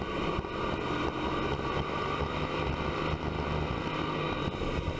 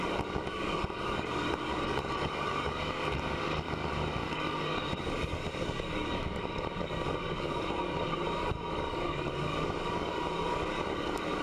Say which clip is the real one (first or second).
first